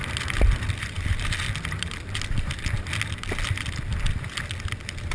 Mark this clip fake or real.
real